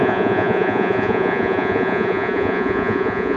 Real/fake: fake